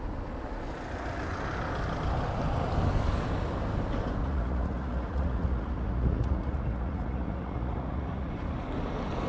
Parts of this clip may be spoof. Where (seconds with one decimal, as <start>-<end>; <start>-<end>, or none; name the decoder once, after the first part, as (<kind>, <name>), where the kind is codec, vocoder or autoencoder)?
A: 4.2-8.3 (vocoder, Vocos)